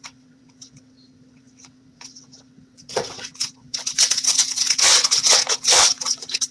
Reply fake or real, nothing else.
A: fake